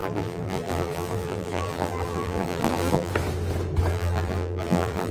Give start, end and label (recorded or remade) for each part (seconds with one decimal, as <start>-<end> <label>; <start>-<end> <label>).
0.0-3.1 remade; 3.1-3.9 recorded; 3.9-5.1 remade